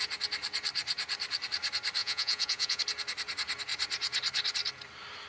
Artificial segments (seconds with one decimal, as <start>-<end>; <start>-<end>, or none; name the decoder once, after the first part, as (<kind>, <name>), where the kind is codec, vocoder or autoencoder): 2.0-2.8 (vocoder, Vocos)